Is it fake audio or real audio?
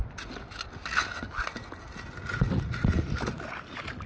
real